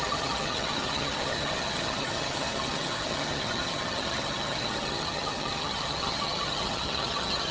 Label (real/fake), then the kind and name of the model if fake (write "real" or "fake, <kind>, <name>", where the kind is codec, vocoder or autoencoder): fake, vocoder, HiFi-GAN